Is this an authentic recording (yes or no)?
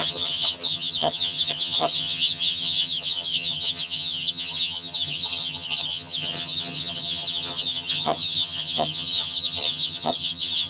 no